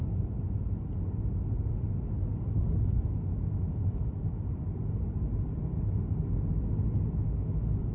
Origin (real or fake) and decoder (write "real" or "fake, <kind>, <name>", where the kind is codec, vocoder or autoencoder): real